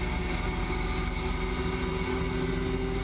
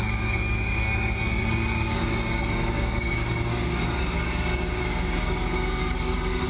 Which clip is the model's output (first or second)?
second